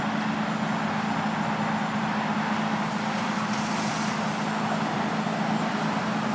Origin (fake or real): real